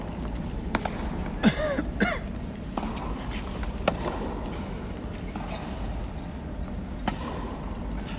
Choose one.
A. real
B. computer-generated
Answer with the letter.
A